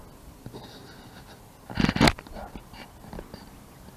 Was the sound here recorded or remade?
recorded